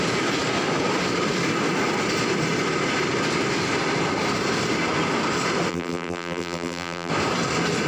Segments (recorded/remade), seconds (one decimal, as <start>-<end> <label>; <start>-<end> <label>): 0.0-5.7 recorded; 5.7-7.1 remade; 7.1-7.9 recorded